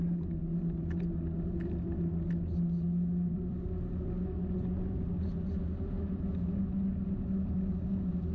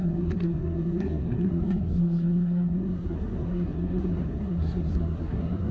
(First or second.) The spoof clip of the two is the second